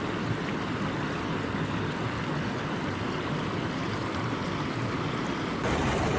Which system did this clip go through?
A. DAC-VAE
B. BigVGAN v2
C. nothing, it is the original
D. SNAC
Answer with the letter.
C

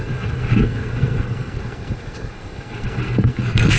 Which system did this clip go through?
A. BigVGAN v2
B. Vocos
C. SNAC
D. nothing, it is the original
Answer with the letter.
C